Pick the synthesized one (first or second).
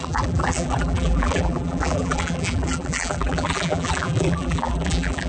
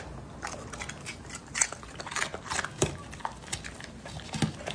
first